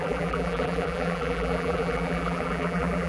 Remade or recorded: remade